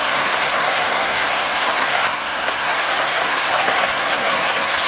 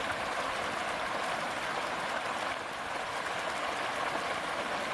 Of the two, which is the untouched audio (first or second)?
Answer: second